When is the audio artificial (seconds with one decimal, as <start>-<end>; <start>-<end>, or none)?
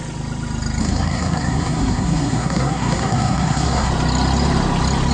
0.8-3.9